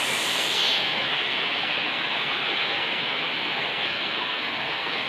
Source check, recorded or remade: remade